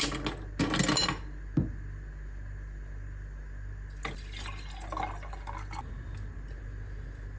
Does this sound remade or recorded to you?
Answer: recorded